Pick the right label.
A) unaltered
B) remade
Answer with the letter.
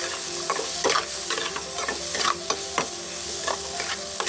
A